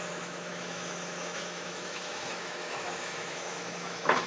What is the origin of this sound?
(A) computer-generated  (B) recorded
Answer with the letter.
A